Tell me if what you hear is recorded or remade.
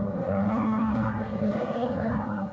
remade